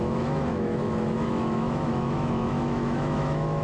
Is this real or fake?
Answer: fake